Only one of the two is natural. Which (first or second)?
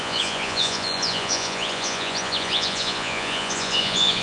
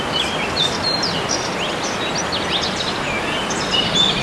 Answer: second